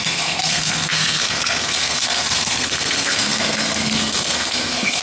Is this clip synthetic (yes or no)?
yes